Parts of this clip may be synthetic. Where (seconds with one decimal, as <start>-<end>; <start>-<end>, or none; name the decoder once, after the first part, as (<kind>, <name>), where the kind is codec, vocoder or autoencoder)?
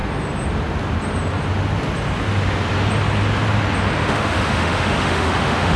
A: 4.0-5.8 (autoencoder, DAC-VAE)